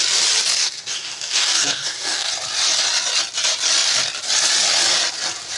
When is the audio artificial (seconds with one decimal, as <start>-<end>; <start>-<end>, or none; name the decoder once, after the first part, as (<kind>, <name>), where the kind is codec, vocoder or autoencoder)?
0.5-2.3 (codec, DAC)